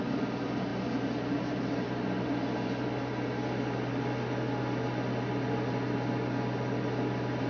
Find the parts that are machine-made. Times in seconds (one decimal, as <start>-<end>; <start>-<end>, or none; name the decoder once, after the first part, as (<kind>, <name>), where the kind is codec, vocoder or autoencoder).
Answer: none